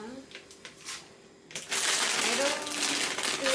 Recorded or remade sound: recorded